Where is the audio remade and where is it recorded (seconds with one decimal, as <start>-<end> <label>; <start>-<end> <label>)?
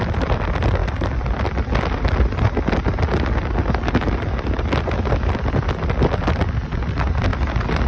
0.0-7.9 recorded